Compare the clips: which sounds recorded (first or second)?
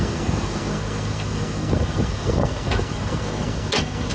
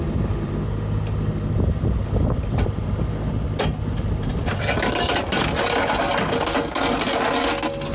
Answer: second